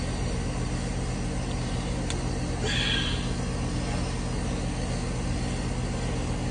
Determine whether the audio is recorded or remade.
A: recorded